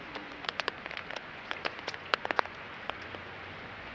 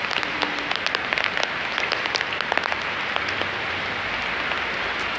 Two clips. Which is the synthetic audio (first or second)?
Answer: first